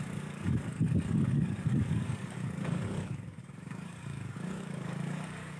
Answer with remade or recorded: remade